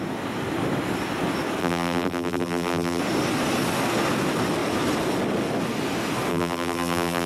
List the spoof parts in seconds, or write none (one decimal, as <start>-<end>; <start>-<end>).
1.6-3.0; 6.3-7.3